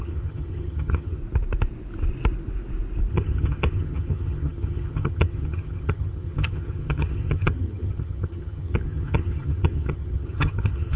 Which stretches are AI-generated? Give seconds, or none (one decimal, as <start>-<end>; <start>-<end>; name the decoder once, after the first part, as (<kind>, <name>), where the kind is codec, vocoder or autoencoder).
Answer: 0.0-1.2 (vocoder, HiFi-GAN); 3.1-11.0